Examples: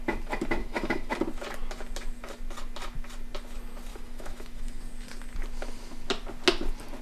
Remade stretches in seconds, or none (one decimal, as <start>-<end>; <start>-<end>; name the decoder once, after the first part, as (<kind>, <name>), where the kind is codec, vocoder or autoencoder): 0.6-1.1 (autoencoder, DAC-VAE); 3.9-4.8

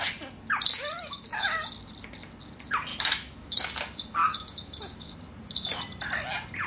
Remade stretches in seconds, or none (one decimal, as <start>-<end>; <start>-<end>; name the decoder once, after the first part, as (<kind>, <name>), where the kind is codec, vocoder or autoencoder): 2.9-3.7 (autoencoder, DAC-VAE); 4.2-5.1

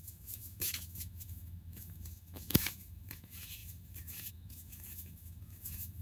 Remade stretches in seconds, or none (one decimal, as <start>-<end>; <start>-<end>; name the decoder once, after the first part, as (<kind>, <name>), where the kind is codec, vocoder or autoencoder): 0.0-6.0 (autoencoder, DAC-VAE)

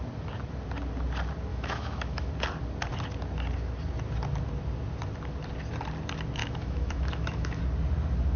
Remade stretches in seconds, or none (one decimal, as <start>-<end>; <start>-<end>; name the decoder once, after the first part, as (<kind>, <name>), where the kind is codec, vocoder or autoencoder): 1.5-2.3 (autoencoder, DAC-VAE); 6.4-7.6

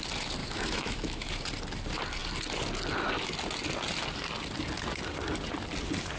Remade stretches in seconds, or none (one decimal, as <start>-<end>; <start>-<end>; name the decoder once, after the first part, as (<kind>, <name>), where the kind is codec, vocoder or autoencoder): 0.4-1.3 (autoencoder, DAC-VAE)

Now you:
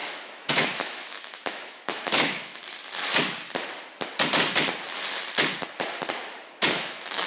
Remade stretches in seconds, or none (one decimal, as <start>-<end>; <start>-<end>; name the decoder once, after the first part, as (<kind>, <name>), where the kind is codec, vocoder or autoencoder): 0.0-2.6 (autoencoder, DAC-VAE); 6.7-7.3

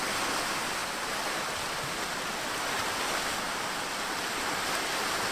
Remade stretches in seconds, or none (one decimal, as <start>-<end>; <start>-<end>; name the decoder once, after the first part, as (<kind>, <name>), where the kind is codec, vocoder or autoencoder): none